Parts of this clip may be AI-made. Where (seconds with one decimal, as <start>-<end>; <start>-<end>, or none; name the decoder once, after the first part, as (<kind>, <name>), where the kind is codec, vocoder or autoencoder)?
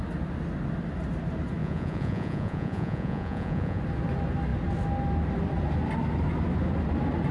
1.6-3.8 (vocoder, Vocos)